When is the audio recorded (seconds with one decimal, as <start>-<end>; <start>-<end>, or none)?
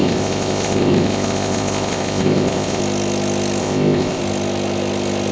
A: 2.8-3.6; 4.2-5.3